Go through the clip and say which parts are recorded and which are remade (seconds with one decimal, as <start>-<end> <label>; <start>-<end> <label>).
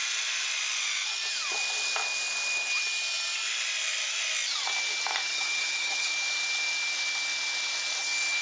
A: 0.0-5.3 recorded; 5.3-6.1 remade; 6.1-8.4 recorded